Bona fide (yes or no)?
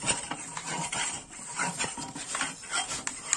yes